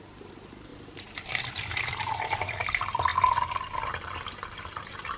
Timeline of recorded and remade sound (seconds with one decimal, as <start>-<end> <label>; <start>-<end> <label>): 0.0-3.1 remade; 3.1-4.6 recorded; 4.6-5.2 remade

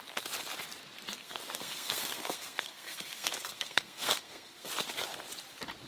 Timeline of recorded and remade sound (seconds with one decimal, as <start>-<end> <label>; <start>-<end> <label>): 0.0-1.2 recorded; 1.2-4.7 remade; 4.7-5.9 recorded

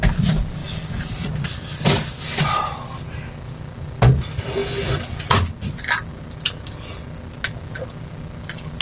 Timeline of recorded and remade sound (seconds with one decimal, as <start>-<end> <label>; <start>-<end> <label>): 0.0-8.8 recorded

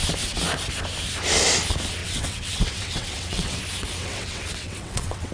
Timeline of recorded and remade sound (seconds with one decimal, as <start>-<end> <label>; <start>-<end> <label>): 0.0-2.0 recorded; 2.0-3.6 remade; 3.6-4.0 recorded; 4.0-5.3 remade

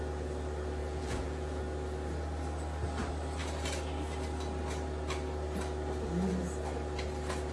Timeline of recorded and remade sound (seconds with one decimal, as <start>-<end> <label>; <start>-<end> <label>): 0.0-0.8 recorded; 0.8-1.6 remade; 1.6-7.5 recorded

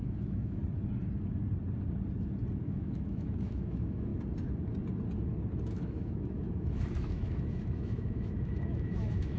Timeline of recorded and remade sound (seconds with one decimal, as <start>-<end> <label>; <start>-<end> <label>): 0.0-0.6 remade; 0.6-2.6 recorded; 2.6-4.1 remade; 4.1-5.6 recorded; 5.6-9.4 remade

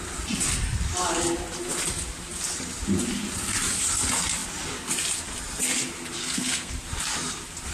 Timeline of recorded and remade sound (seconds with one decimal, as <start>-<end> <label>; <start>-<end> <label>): 0.0-6.2 recorded; 6.2-6.7 remade; 6.7-7.7 recorded